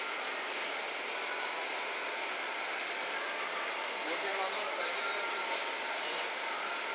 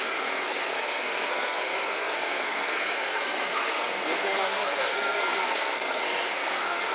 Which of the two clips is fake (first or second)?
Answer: second